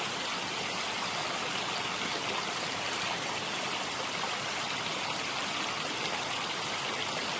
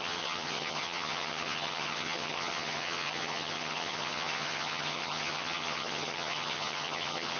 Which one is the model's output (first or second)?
second